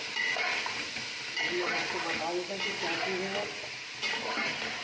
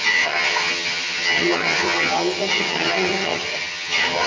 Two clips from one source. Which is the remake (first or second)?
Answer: second